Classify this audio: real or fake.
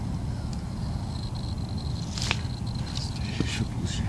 real